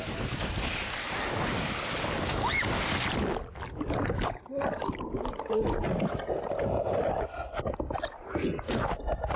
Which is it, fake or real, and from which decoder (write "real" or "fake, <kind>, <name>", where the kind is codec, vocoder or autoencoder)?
real